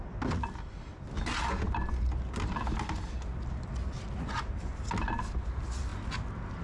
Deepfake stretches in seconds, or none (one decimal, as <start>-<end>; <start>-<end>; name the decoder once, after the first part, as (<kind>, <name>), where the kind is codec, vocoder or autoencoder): none